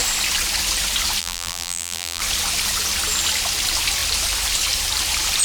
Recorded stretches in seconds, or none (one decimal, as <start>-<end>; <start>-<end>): 0.0-1.2; 2.2-5.4